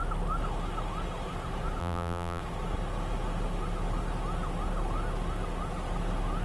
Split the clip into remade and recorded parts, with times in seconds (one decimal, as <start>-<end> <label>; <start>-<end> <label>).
0.0-1.8 recorded; 1.8-2.4 remade; 2.4-6.4 recorded